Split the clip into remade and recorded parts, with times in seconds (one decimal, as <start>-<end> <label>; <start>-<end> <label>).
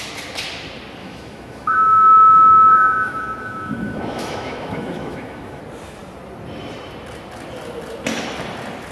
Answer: 0.0-1.0 recorded; 1.0-5.6 remade; 5.6-8.9 recorded